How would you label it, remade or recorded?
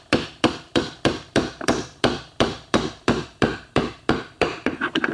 remade